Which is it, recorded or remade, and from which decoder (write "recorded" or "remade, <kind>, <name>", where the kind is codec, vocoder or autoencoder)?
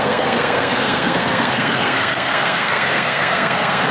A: remade, codec, SNAC